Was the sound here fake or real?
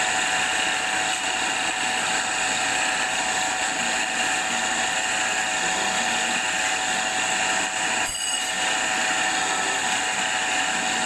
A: real